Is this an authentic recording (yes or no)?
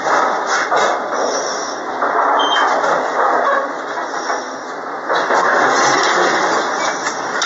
yes